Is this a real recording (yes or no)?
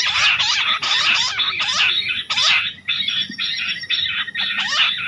yes